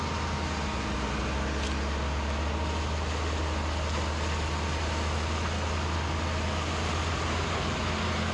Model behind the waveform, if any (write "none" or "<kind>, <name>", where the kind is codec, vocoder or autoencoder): none